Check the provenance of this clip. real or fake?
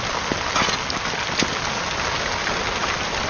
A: real